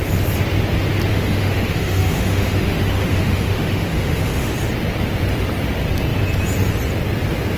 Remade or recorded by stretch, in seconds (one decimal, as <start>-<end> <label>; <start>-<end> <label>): 0.0-1.1 recorded; 1.1-4.5 remade; 4.5-7.6 recorded